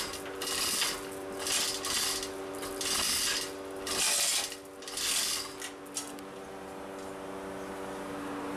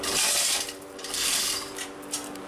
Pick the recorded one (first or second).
first